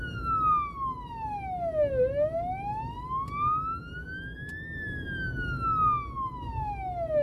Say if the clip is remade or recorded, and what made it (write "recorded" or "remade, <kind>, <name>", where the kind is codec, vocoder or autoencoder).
recorded